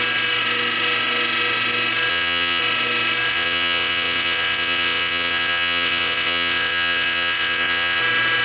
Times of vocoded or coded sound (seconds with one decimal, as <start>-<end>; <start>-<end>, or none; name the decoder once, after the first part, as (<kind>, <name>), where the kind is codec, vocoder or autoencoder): 2.1-2.6 (vocoder, WaveNeXt); 3.3-8.0